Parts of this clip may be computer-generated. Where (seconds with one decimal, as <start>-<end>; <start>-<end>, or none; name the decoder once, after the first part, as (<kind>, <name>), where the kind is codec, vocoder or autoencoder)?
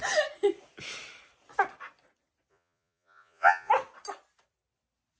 2.5-3.7 (vocoder, Vocos)